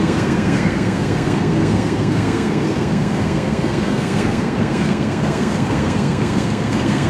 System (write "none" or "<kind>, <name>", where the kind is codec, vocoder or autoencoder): codec, SNAC